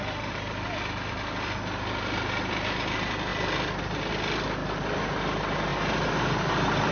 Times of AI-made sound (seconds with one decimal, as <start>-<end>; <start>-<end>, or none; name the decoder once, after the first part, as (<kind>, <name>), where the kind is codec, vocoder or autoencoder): none